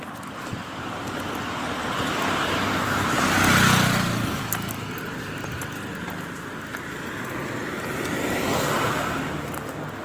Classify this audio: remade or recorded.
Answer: recorded